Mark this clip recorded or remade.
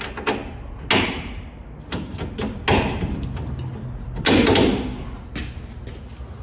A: recorded